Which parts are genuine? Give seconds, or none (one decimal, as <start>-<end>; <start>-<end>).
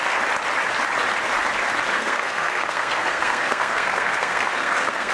0.0-1.9